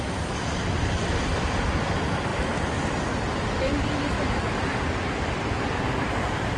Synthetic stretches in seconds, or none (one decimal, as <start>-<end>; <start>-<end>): none